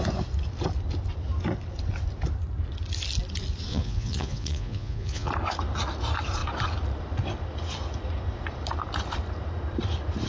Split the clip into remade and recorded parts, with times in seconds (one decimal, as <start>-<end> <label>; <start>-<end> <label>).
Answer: 0.0-3.7 recorded; 3.7-5.3 remade; 5.3-10.3 recorded